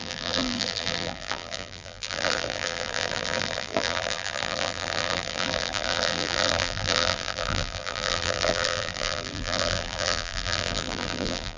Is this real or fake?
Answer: fake